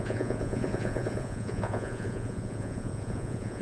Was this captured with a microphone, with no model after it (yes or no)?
no